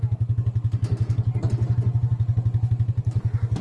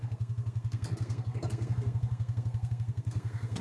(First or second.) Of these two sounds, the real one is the first